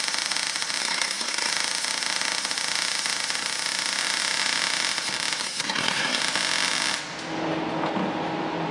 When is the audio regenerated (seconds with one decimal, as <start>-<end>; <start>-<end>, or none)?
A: 0.8-1.5; 5.4-6.2